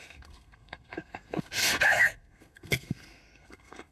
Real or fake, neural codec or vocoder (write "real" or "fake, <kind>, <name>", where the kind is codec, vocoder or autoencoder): fake, codec, SNAC